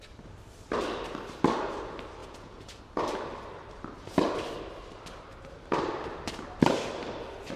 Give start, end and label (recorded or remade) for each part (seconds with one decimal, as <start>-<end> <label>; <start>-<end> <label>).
0.0-2.2 recorded; 2.2-2.8 remade; 2.8-7.6 recorded